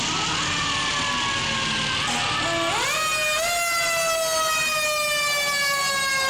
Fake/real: real